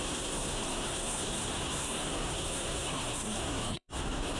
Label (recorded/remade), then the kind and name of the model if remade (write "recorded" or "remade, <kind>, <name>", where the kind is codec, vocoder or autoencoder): remade, codec, SNAC